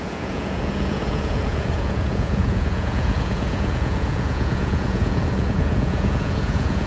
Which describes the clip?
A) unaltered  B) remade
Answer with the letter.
B